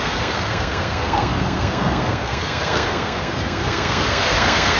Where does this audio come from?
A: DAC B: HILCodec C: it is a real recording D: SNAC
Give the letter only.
D